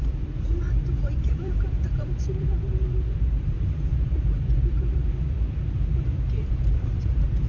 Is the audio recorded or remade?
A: remade